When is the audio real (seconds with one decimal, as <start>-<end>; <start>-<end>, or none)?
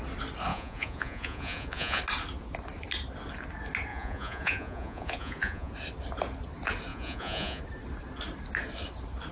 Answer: 0.0-0.5; 2.0-3.9; 5.7-6.9; 7.6-9.3